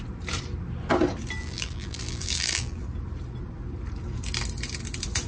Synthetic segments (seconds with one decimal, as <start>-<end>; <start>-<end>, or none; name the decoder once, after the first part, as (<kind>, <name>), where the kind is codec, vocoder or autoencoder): 1.4-2.8 (vocoder, BigVGAN v2)